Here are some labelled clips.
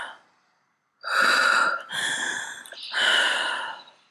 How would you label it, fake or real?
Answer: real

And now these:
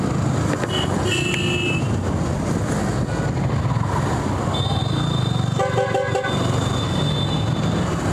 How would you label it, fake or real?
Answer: real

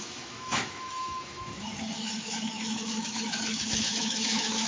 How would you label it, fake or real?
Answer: fake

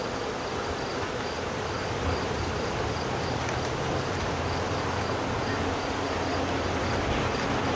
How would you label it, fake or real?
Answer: real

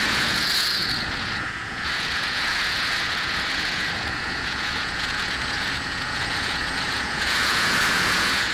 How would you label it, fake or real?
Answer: fake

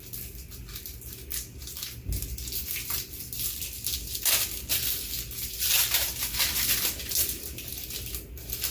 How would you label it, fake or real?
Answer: real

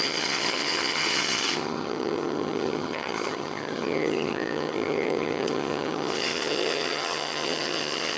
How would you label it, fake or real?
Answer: fake